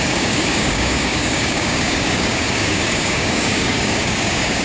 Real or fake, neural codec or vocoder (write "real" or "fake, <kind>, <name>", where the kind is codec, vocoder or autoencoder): fake, codec, DAC